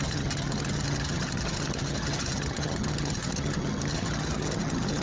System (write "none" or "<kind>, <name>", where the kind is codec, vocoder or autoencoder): vocoder, HiFi-GAN